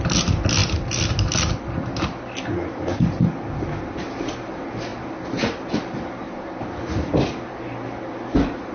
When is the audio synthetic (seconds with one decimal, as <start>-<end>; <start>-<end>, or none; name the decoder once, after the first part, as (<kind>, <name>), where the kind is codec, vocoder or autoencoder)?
none